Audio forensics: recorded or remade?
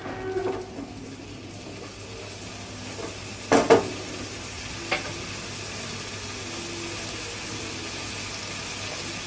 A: recorded